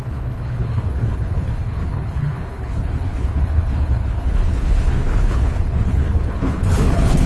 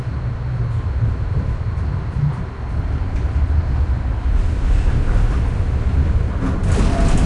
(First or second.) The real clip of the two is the second